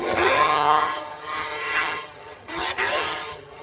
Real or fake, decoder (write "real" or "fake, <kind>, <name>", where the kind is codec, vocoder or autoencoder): fake, vocoder, HiFi-GAN